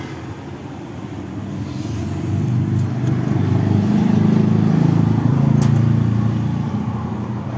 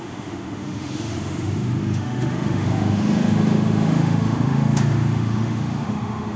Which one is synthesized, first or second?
second